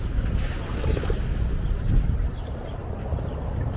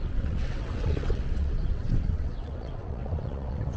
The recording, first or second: first